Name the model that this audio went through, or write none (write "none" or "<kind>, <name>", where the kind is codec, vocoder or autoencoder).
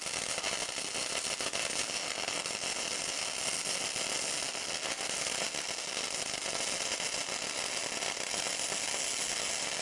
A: none